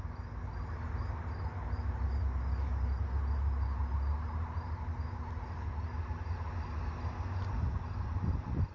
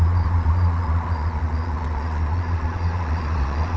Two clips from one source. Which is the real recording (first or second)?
first